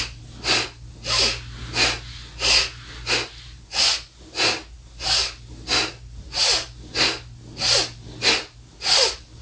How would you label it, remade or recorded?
recorded